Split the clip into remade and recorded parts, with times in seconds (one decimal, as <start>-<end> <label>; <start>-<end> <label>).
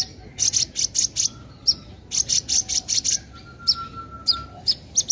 0.0-2.6 recorded; 2.6-3.2 remade; 3.2-5.1 recorded